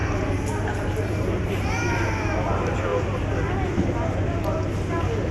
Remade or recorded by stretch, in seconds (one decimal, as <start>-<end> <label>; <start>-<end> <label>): 0.0-5.3 recorded